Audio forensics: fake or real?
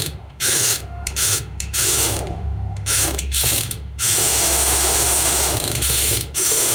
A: fake